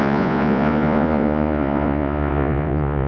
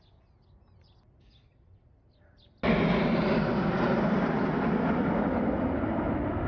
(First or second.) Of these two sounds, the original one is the second